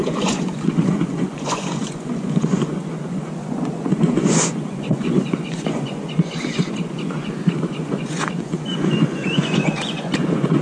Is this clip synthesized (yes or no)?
yes